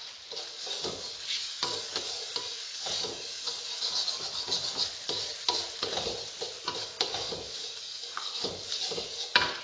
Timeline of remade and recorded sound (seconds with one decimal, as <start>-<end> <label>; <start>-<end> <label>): 0.0-0.5 recorded; 0.5-4.8 remade; 4.8-6.8 recorded; 6.8-9.6 remade